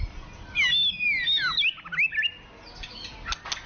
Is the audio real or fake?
real